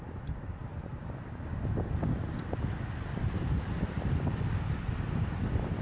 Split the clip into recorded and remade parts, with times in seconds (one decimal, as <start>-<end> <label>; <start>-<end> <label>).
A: 0.0-0.6 remade; 0.6-3.8 recorded; 3.8-5.8 remade